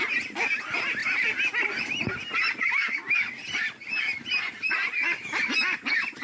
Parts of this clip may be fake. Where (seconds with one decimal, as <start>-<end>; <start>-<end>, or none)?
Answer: none